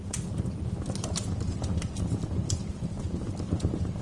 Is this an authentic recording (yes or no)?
yes